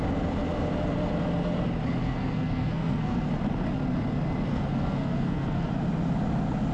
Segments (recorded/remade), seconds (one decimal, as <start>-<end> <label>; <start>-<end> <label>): 0.0-2.0 recorded; 2.0-3.3 remade; 3.3-4.5 recorded; 4.5-5.7 remade; 5.7-6.7 recorded